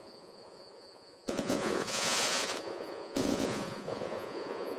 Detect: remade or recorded remade